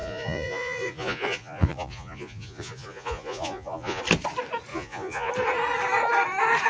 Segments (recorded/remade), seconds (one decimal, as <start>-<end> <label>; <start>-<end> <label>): 0.0-4.0 remade; 4.0-4.7 recorded; 4.7-5.3 remade; 5.3-6.7 recorded